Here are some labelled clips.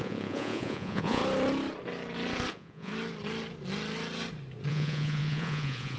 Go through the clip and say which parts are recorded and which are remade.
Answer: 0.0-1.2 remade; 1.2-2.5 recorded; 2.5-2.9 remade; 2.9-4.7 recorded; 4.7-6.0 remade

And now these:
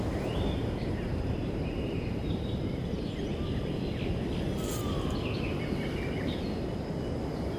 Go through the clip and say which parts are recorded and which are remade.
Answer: 0.0-3.3 remade; 3.3-7.6 recorded